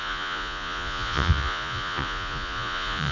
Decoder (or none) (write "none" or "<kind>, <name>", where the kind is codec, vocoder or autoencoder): vocoder, Vocos